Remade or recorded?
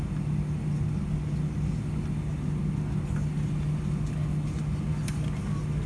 recorded